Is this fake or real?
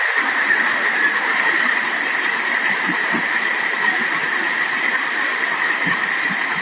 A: fake